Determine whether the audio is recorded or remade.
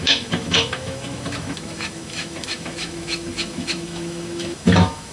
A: remade